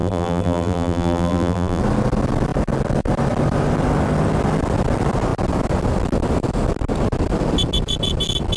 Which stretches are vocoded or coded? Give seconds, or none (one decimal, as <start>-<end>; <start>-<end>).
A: 0.0-1.8